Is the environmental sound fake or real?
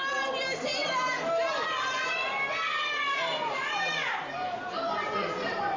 real